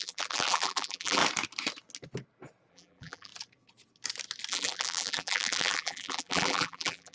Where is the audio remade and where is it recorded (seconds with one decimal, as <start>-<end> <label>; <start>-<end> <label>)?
0.0-1.2 remade; 1.2-2.7 recorded; 2.7-3.3 remade; 3.3-4.5 recorded; 4.5-7.1 remade